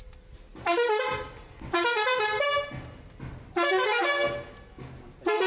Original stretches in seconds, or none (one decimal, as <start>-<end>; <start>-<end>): 0.0-5.5